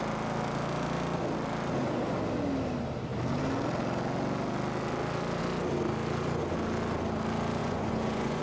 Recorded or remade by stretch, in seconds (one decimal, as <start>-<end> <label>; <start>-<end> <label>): 0.0-7.6 recorded; 7.6-8.4 remade